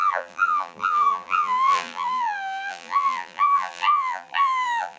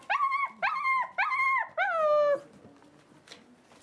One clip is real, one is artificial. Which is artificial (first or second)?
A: first